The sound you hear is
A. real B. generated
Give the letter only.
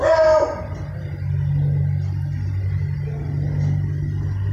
A